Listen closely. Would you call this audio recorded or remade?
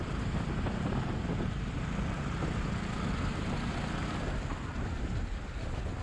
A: recorded